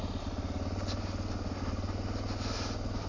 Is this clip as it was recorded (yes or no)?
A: yes